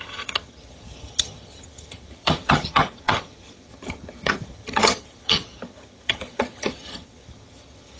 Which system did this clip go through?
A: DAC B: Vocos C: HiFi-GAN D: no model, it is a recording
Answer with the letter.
C